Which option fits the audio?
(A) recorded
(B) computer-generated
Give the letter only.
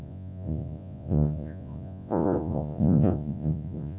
B